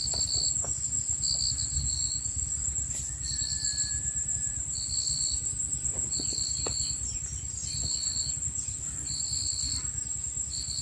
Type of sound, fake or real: real